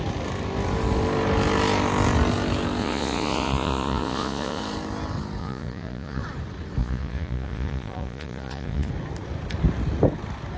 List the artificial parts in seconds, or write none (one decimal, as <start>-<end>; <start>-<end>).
2.8-4.6; 5.4-6.2; 6.8-8.9